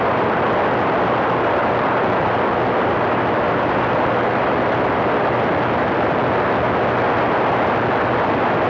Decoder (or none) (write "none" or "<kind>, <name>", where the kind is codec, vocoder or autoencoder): none